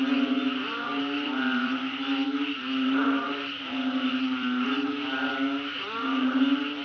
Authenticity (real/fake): fake